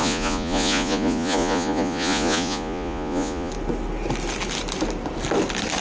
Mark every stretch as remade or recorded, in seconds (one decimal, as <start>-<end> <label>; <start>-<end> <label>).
0.0-3.5 remade; 3.5-5.8 recorded